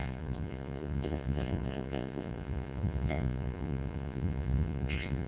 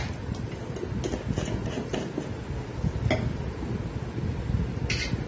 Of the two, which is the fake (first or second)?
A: first